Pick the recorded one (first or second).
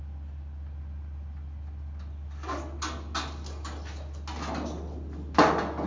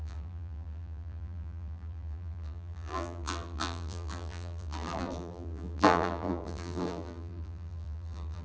first